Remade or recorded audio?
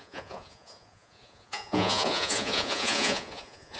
remade